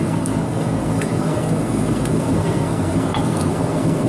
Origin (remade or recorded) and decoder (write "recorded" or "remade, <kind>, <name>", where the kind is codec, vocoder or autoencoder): remade, codec, SNAC